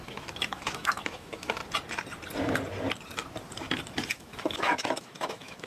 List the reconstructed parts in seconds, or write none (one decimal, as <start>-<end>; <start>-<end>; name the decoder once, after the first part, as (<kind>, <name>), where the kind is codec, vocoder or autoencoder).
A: 0.0-1.6 (autoencoder, DAC-VAE); 4.1-5.7